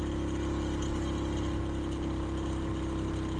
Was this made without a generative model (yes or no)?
yes